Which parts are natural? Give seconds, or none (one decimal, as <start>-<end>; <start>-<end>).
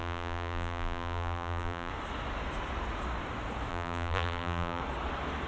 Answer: 1.9-3.7; 4.8-5.5